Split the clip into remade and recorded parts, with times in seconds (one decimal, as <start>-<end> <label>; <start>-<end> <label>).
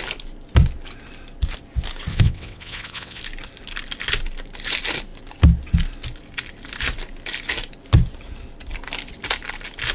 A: 0.0-2.1 recorded; 2.1-3.2 remade; 3.2-9.9 recorded